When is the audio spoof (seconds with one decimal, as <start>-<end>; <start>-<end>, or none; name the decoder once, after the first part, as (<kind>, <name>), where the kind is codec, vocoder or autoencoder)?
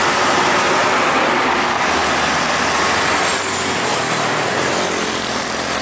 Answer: none